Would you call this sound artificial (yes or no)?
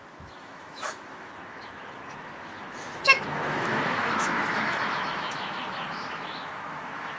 yes